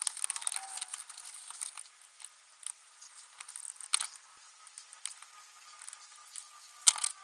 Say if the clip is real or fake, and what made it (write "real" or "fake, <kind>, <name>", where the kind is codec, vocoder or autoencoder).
real